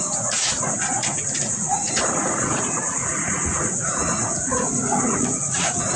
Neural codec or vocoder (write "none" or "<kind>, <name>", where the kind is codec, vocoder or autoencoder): vocoder, Vocos